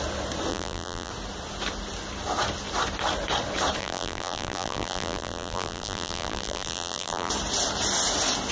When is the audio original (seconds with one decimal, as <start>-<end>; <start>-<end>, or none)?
0.0-0.5; 1.1-3.8; 7.3-8.5

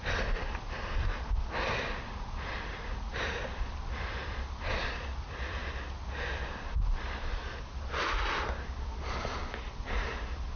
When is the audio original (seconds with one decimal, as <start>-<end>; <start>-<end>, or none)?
5.6-10.6